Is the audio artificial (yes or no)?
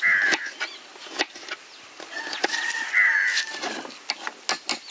no